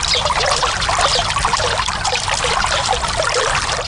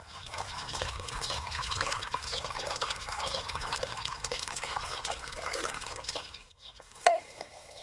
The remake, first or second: second